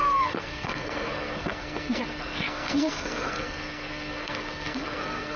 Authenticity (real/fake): fake